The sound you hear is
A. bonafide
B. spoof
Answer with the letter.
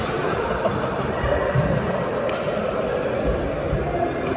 A